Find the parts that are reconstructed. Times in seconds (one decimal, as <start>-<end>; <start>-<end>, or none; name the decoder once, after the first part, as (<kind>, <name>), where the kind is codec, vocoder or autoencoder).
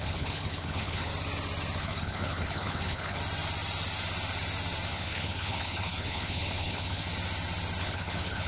0.0-1.1 (codec, HILCodec); 1.8-3.2; 4.9-7.0; 7.8-8.5